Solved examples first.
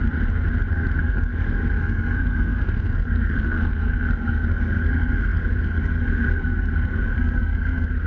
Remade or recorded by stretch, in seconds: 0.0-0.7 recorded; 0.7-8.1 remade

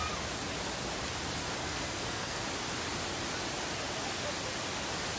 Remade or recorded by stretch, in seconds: 0.0-1.6 recorded; 1.6-2.4 remade; 2.4-5.2 recorded

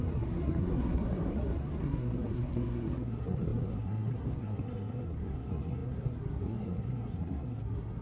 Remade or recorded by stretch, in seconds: 0.0-8.0 remade

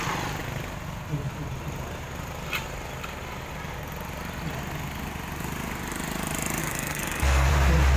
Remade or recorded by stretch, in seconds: 0.0-6.6 recorded; 6.6-7.5 remade; 7.5-8.0 recorded

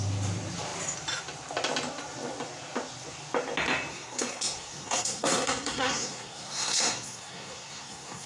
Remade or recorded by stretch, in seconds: 0.0-3.9 recorded; 3.9-8.3 remade

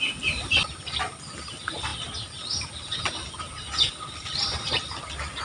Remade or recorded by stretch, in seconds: 0.0-5.4 recorded

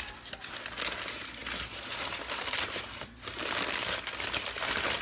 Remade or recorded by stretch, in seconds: 0.0-5.0 recorded

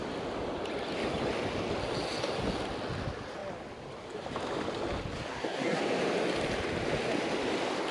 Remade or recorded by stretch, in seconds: 0.0-5.3 recorded; 5.3-5.8 remade; 5.8-7.9 recorded